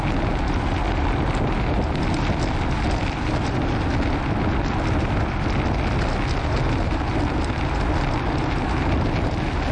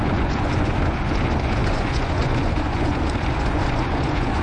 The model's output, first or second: second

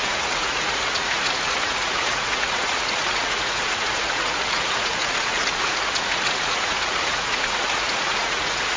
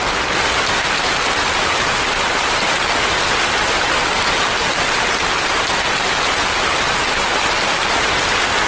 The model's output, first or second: first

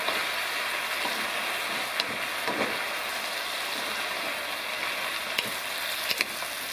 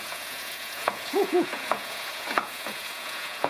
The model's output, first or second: second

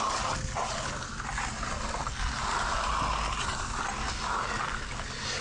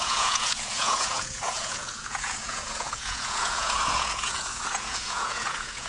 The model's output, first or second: second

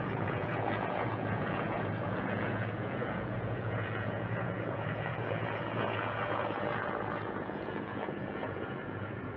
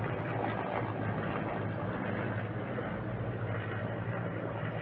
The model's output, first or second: first